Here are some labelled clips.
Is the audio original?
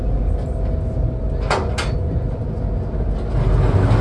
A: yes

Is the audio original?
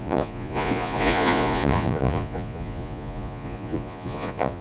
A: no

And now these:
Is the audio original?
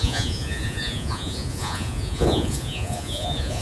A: no